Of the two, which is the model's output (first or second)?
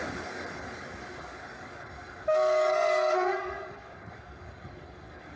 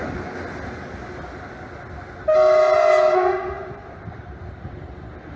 first